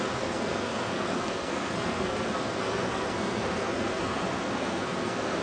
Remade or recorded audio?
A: remade